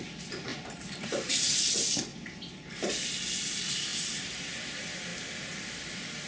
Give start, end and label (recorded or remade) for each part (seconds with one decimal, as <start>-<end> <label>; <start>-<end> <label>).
0.0-0.5 recorded; 0.5-1.6 remade; 1.6-2.1 recorded; 2.1-3.1 remade; 3.1-3.9 recorded; 3.9-4.5 remade; 4.5-6.3 recorded